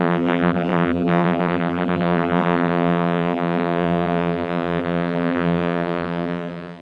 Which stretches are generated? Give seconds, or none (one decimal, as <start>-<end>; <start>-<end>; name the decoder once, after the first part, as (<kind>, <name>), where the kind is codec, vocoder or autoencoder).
0.0-6.8 (vocoder, BigVGAN v2)